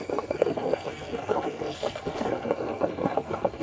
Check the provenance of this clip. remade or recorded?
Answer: remade